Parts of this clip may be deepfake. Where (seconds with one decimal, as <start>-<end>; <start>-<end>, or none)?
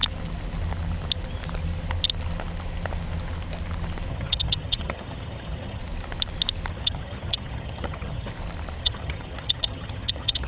4.1-5.8; 6.7-8.3; 8.8-10.5